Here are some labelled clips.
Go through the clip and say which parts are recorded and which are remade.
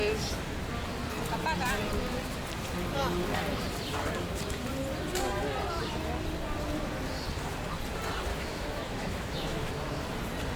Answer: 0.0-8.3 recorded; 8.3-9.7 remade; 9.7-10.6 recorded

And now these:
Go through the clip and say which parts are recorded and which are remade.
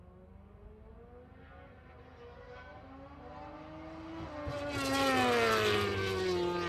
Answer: 0.0-6.7 recorded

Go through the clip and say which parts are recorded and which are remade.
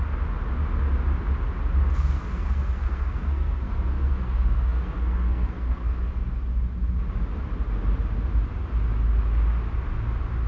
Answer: 0.0-1.9 recorded; 1.9-6.1 remade; 6.1-10.5 recorded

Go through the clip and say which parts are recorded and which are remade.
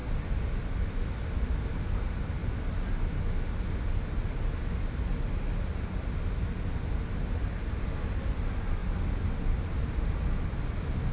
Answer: 0.0-11.1 recorded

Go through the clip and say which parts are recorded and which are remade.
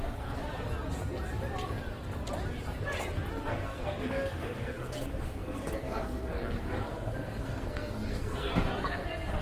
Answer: 0.0-0.4 remade; 0.4-3.4 recorded; 3.4-9.4 remade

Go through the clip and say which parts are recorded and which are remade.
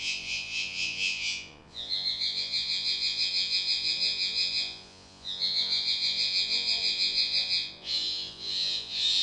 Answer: 0.0-9.2 remade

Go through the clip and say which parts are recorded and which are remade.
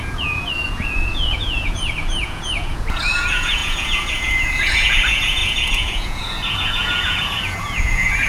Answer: 0.0-8.3 remade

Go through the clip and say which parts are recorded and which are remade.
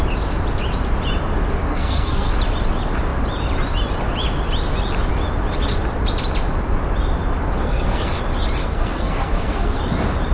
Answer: 0.0-1.7 recorded; 1.7-2.3 remade; 2.3-7.6 recorded; 7.6-8.2 remade; 8.2-8.6 recorded; 8.6-9.8 remade; 9.8-10.3 recorded